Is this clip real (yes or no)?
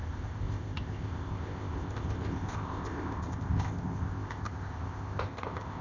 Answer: no